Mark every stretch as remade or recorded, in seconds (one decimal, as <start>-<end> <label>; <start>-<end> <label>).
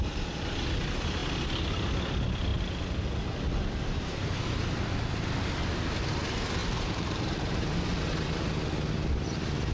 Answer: 0.0-6.6 recorded; 6.6-7.7 remade; 7.7-9.7 recorded